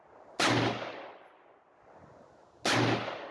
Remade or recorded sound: recorded